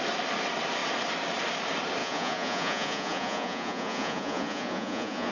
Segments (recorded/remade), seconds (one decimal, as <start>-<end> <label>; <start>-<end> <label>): 0.0-2.0 recorded; 2.0-5.3 remade